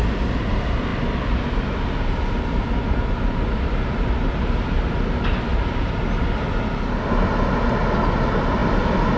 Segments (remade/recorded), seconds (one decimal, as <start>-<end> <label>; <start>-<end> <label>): 0.0-9.2 recorded